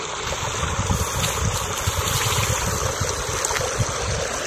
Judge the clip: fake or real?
real